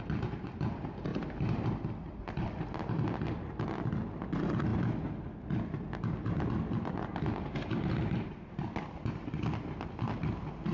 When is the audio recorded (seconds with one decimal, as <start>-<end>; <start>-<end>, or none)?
0.0-1.1; 1.7-10.7